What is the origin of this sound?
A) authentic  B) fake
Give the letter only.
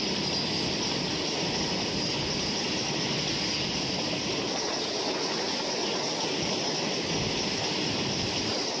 A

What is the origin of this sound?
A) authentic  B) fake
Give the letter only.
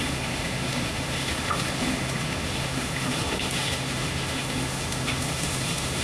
B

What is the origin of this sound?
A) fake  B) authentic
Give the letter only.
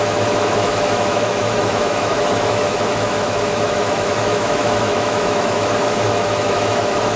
A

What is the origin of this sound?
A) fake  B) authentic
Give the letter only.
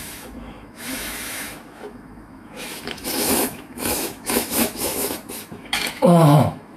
A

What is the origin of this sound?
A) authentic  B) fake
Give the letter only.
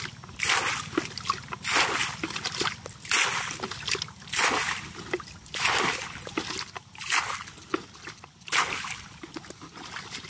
A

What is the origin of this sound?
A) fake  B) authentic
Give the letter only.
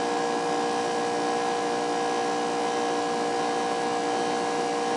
B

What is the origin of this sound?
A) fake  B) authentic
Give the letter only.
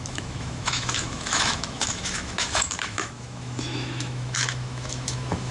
A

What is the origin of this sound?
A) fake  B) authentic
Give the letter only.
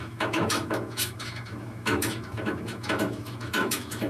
A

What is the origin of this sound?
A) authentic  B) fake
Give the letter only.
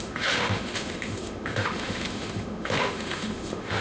B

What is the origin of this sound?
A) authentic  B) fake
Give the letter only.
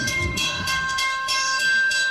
B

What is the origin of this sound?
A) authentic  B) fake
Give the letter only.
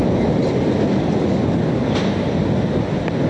A